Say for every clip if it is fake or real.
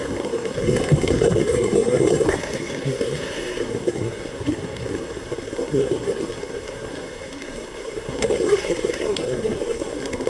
fake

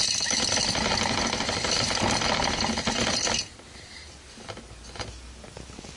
real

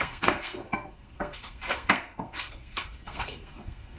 fake